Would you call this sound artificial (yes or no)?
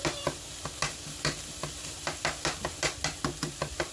no